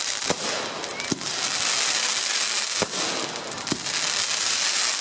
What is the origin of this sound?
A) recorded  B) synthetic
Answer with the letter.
A